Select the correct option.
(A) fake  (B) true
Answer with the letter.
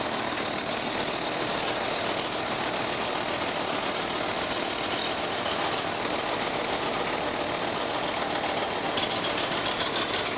B